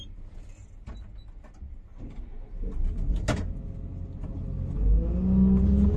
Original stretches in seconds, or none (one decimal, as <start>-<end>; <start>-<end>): 0.0-0.6; 2.2-6.0